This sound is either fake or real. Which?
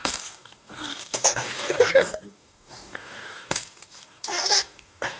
fake